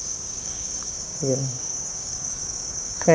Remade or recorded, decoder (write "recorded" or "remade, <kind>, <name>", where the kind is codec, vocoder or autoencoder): remade, codec, DAC